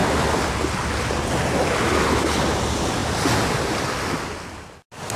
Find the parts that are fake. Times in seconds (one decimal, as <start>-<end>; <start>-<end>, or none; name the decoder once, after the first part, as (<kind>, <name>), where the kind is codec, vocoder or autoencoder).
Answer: none